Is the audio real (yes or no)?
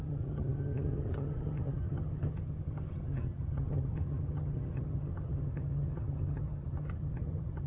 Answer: no